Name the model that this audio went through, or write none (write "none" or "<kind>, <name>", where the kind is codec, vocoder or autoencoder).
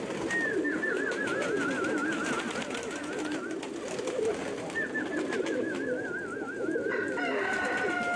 none